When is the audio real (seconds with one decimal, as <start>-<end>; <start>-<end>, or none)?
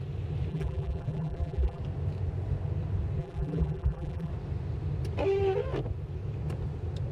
0.0-0.5; 1.8-3.2; 4.3-7.1